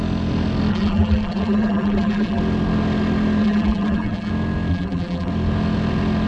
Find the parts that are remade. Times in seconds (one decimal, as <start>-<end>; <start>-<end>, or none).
0.7-2.4; 3.4-4.3; 4.7-5.3